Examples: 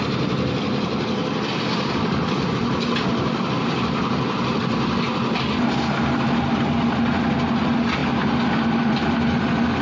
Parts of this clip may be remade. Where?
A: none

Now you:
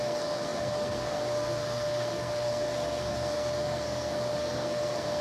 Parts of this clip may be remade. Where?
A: 0.0-5.2 (codec, SNAC)

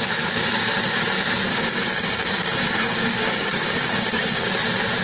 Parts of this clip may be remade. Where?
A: 1.5-4.5 (codec, DAC)

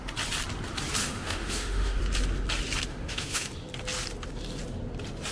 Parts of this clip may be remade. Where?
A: 1.0-2.0 (autoencoder, DAC-VAE); 2.9-3.5

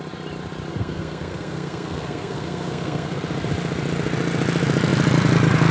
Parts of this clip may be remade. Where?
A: 0.7-3.2 (codec, SNAC)

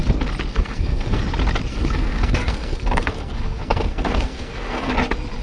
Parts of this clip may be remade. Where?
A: 0.5-1.2 (codec, SNAC); 1.7-4.9